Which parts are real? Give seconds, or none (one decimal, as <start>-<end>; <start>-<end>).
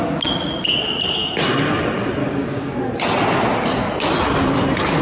0.0-2.2; 2.8-5.0